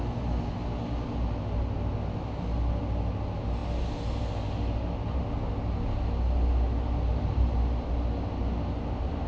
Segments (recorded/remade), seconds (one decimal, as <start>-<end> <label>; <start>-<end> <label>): 0.0-9.3 recorded